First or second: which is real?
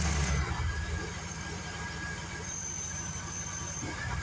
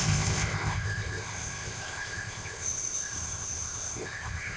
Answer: first